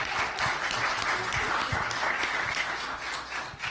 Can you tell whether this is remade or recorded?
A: recorded